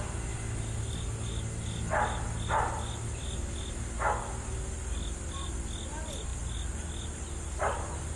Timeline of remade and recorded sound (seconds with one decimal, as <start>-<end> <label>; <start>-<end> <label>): 0.0-8.2 recorded